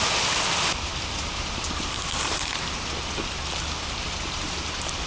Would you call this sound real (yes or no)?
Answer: no